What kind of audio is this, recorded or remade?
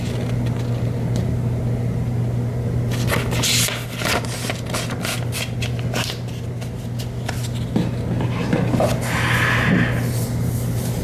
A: recorded